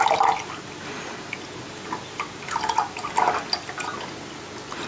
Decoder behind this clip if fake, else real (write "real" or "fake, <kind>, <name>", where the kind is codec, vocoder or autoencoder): real